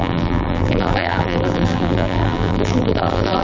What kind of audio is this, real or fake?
fake